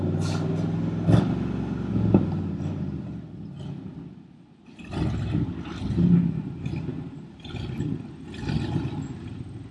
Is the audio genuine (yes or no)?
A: yes